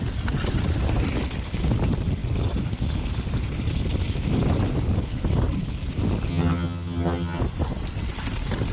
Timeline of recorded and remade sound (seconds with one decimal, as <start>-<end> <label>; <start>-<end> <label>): 0.0-6.3 recorded; 6.3-7.4 remade; 7.4-8.7 recorded